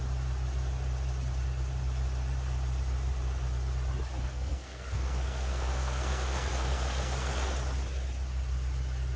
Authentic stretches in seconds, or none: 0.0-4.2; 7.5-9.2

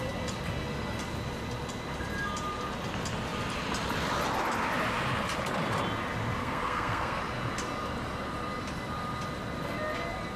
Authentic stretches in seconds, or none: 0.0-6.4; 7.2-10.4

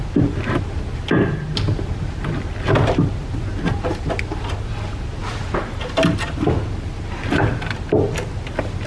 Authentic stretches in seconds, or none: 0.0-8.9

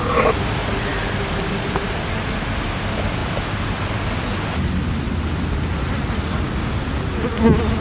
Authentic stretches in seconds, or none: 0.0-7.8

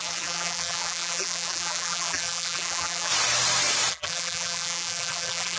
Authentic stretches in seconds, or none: 3.1-3.9

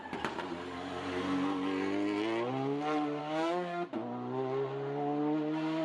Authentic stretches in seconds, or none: 0.0-3.2; 3.9-5.8

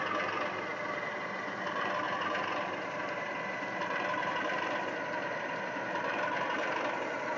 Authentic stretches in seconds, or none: 0.0-7.4